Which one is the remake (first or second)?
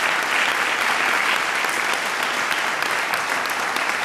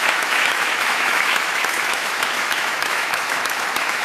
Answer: second